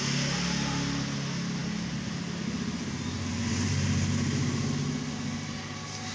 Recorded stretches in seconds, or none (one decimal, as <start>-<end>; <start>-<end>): 0.0-6.1